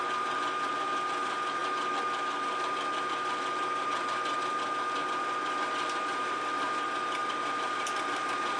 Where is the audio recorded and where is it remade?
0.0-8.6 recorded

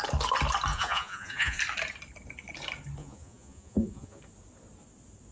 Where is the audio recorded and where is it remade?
0.0-0.7 recorded; 0.7-1.6 remade; 1.6-3.0 recorded; 3.0-4.2 remade; 4.2-5.3 recorded

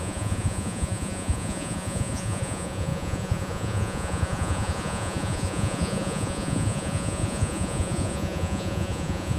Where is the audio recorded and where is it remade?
0.0-9.4 remade